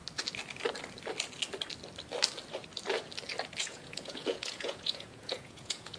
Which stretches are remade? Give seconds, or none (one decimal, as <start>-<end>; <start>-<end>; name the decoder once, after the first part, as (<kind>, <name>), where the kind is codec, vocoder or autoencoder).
3.6-6.0 (vocoder, Vocos)